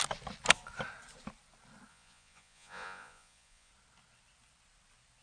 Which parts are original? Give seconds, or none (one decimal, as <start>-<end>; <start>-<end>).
0.0-1.9; 3.7-5.2